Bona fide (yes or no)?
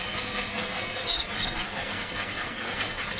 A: no